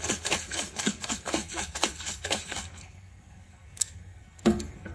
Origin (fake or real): fake